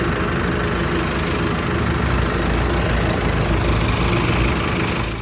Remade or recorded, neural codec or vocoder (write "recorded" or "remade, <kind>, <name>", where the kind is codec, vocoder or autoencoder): recorded